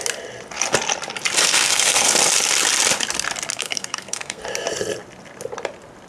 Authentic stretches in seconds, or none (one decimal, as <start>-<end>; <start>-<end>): 0.0-1.5; 2.1-3.5; 4.4-6.1